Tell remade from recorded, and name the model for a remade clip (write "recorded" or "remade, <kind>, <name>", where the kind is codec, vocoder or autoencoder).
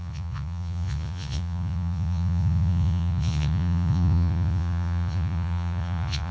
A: remade, vocoder, Vocos